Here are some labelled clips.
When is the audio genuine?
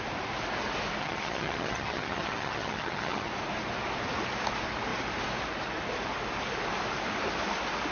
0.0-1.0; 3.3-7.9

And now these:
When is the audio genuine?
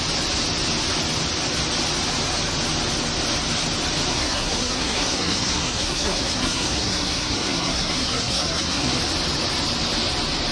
0.0-4.1; 9.0-10.5